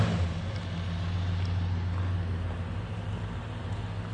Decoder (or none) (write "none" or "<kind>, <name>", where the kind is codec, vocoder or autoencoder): none